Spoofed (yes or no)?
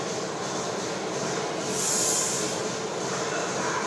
no